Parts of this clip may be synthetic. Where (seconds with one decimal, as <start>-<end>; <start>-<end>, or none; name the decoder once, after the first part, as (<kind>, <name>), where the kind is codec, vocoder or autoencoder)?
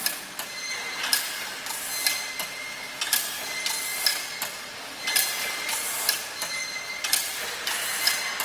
none